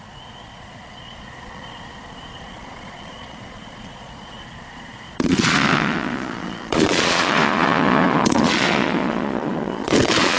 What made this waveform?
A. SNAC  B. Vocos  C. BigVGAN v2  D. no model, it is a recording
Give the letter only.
B